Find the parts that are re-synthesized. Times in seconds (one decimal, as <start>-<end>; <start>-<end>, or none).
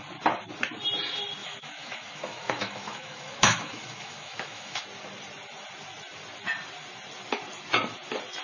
1.4-4.8